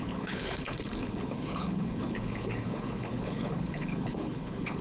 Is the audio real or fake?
fake